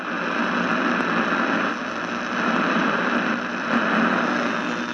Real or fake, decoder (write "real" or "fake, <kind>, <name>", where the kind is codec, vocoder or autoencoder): real